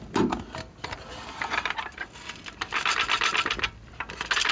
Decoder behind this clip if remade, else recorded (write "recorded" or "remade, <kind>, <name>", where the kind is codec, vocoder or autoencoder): recorded